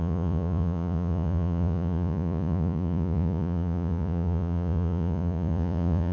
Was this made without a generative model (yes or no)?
no